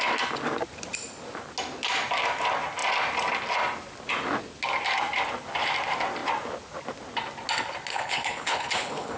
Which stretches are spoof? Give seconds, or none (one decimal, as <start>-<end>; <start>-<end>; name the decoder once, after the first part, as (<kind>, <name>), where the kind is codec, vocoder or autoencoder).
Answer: 7.9-9.2 (codec, HILCodec)